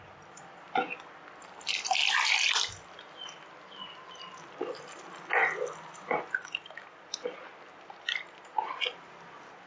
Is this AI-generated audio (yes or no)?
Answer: no